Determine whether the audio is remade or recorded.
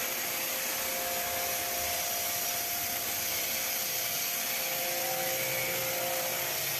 recorded